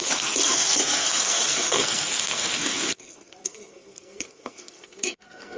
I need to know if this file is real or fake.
fake